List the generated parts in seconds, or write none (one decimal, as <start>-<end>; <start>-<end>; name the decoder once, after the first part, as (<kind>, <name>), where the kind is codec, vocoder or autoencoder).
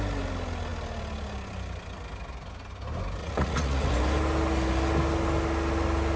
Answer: 3.2-3.9 (vocoder, Vocos)